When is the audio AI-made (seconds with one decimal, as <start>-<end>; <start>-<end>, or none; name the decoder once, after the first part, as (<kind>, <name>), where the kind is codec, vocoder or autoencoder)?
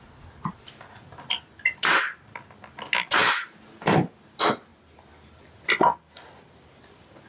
none